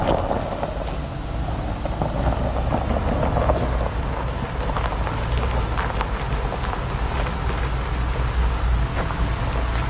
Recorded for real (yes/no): yes